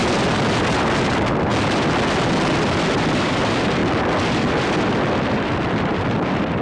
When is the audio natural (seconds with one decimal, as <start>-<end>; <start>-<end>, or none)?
1.5-2.3; 3.8-4.3